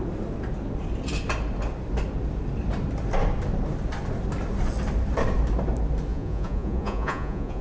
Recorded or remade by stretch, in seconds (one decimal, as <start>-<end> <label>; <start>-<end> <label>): 0.0-6.1 recorded; 6.1-7.6 remade